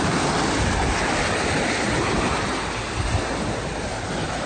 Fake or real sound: real